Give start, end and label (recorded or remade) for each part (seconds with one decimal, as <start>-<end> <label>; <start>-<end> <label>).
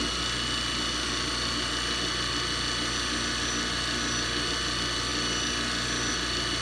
0.0-6.6 recorded